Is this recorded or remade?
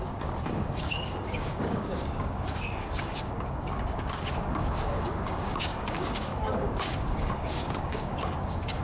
remade